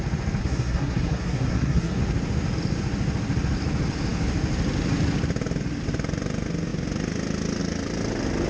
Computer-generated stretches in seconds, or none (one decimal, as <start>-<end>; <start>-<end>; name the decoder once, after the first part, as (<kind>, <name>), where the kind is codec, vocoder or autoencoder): 0.4-2.0 (codec, SNAC)

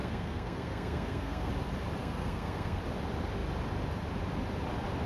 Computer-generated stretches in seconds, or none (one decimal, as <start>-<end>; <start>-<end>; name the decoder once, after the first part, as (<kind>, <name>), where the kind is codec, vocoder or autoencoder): 0.0-1.5 (codec, SNAC); 2.0-2.8

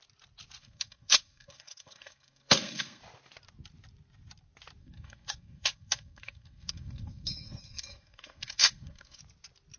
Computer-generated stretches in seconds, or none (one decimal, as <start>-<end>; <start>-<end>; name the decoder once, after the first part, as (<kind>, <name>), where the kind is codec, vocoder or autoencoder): 0.6-3.0 (codec, SNAC); 4.8-9.2

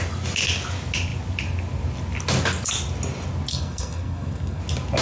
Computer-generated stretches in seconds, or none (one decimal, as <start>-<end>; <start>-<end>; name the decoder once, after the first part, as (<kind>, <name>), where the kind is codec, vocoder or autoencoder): 3.5-4.6 (codec, SNAC)

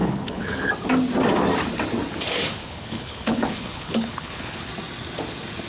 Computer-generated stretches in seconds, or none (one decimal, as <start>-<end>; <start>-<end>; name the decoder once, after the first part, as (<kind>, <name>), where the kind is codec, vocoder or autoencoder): 0.0-0.7 (codec, HILCodec); 2.6-4.7

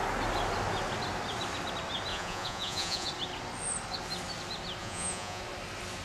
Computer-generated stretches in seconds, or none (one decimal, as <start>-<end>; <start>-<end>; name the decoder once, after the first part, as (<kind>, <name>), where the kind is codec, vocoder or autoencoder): 2.1-3.1 (vocoder, Vocos); 4.8-5.4

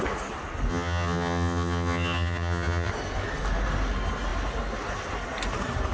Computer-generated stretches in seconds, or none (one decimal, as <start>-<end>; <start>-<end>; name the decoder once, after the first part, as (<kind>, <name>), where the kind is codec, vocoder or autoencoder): 0.7-2.9 (vocoder, HiFi-GAN)

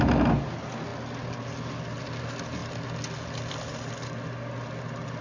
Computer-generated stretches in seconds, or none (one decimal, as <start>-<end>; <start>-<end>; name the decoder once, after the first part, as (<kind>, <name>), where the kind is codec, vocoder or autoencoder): none